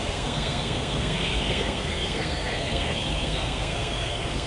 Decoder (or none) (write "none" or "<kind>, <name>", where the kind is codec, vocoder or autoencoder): codec, SNAC